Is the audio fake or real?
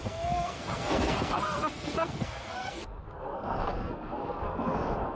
fake